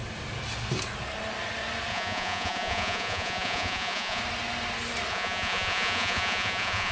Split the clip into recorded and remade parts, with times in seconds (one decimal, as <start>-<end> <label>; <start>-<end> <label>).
0.0-1.9 recorded; 1.9-4.2 remade; 4.2-5.1 recorded; 5.1-6.9 remade